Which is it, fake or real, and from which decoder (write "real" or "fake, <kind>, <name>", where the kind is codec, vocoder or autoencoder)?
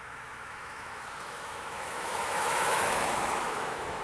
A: fake, autoencoder, DAC-VAE